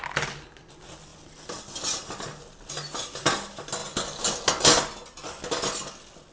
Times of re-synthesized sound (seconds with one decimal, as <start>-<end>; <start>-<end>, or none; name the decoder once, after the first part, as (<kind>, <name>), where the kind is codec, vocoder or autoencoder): 1.1-2.4 (vocoder, BigVGAN v2)